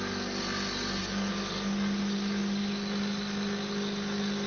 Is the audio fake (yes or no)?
no